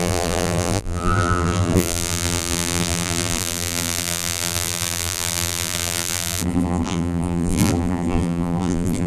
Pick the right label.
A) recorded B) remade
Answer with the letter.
B